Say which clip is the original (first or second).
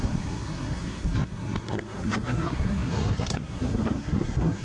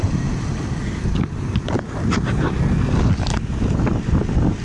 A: second